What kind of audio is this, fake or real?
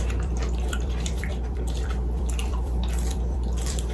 fake